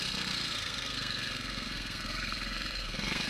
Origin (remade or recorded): remade